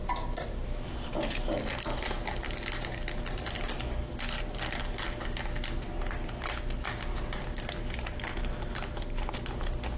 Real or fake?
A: real